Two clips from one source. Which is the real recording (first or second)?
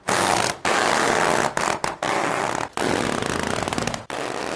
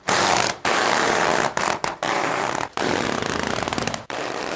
first